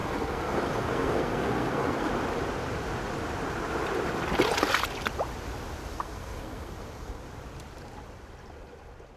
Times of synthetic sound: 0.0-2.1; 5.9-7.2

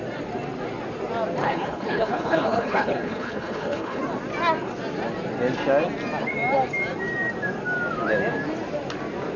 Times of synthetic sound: 1.4-4.0

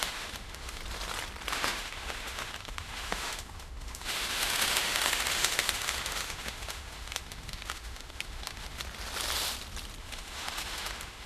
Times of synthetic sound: 0.0-0.8; 1.5-8.8; 10.0-11.3

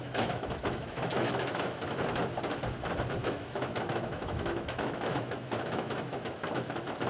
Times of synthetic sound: 0.0-2.2; 3.2-7.1

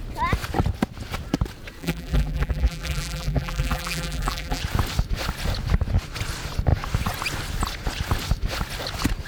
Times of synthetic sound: 1.8-4.6

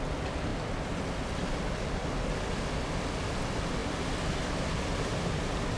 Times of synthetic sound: none

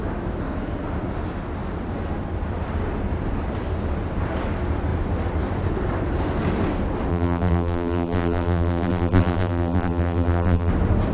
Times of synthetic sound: 7.1-10.7

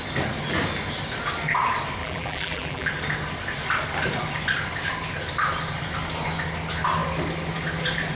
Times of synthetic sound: 2.0-2.9